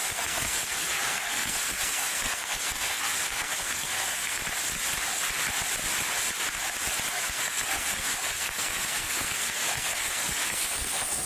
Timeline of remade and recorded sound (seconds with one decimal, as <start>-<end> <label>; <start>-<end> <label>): 0.0-4.4 remade; 4.4-7.1 recorded; 7.1-11.3 remade